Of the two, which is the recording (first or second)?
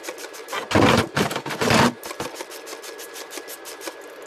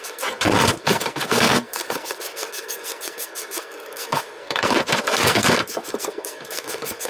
first